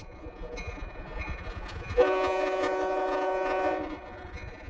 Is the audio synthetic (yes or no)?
yes